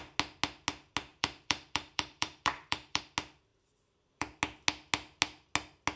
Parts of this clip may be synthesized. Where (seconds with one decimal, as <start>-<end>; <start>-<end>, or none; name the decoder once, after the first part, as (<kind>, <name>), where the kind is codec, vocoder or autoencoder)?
1.1-3.0 (vocoder, BigVGAN v2); 3.5-4.4